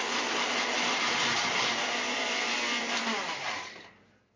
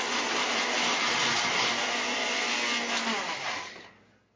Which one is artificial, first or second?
first